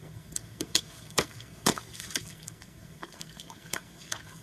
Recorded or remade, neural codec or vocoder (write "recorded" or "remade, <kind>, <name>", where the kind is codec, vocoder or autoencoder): remade, codec, SNAC